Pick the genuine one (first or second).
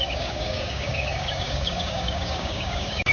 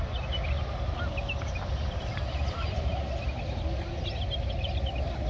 second